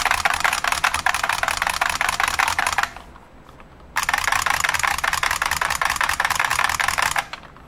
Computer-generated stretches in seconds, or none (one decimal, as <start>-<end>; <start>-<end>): none